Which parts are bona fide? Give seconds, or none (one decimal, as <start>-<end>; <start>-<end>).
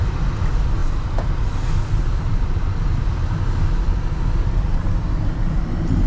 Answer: 0.0-6.1